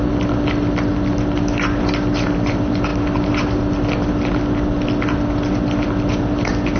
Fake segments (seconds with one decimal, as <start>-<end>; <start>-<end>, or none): none